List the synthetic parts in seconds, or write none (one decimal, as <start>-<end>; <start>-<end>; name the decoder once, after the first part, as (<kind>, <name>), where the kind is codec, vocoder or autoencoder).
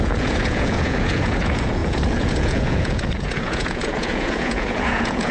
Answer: 0.0-5.3 (vocoder, Vocos)